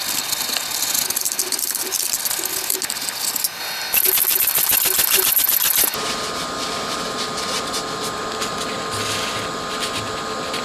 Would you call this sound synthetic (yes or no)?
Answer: no